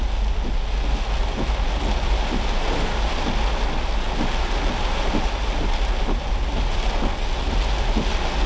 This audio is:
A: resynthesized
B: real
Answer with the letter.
B